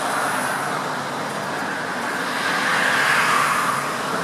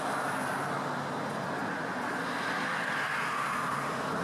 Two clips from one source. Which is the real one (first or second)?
second